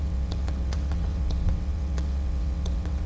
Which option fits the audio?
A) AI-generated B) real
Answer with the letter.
A